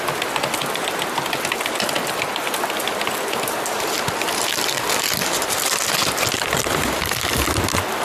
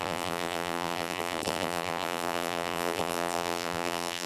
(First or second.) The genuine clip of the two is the first